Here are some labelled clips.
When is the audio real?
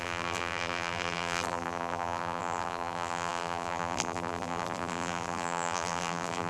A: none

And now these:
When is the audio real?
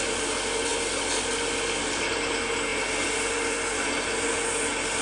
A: 0.0-5.0